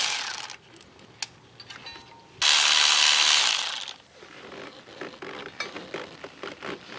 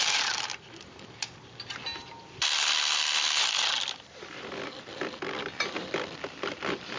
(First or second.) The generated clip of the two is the second